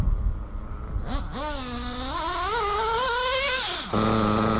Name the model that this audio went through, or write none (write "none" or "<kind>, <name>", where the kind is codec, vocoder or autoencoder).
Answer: none